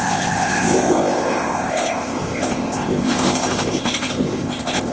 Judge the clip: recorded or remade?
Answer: remade